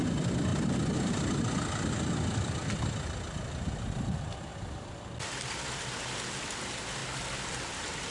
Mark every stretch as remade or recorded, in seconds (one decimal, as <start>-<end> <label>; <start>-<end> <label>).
0.0-0.5 recorded; 0.5-1.1 remade; 1.1-7.0 recorded; 7.0-7.6 remade; 7.6-8.1 recorded

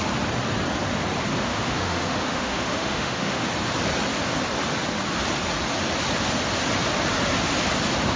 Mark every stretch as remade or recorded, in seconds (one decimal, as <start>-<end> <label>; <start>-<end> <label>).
0.0-1.5 recorded; 1.5-3.5 remade; 3.5-8.2 recorded